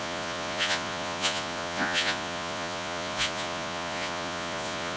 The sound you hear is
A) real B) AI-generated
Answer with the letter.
B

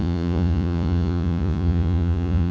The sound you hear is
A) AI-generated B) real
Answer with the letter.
A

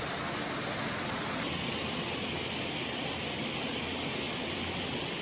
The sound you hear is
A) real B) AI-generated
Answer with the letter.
A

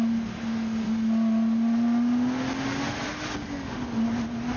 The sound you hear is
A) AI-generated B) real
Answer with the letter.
B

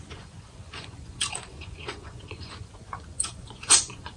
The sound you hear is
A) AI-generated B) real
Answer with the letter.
A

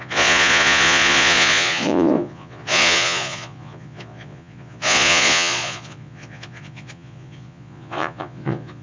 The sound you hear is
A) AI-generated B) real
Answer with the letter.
A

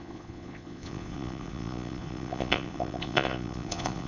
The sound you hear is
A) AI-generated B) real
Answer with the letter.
A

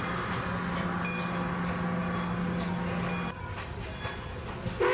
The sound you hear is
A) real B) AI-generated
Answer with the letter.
A